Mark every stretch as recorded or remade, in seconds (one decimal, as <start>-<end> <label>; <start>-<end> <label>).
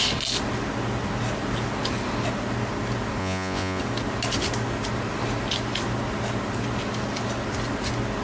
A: 0.0-3.2 recorded; 3.2-3.8 remade; 3.8-8.2 recorded